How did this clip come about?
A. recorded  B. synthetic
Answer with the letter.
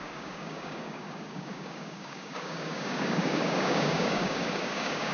B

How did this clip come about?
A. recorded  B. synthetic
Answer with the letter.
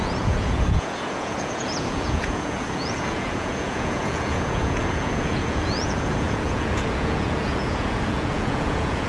B